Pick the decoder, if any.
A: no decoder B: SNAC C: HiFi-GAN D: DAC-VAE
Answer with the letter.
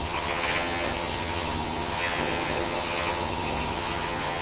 C